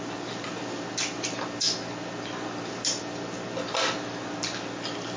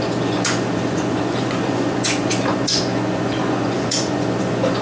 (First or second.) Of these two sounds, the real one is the first